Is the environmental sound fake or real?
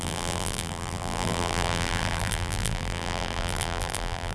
fake